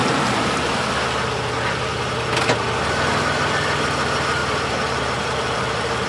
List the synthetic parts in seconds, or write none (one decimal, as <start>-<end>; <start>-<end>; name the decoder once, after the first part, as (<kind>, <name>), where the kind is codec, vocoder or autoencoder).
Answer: 0.0-0.8 (vocoder, BigVGAN v2); 4.4-6.1